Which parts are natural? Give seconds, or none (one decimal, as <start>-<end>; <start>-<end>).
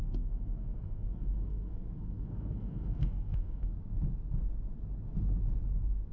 3.7-6.1